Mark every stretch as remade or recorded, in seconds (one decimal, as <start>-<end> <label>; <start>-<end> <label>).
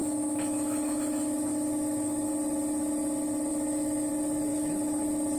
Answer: 0.0-2.3 remade; 2.3-3.5 recorded; 3.5-4.1 remade; 4.1-4.5 recorded; 4.5-5.0 remade; 5.0-5.4 recorded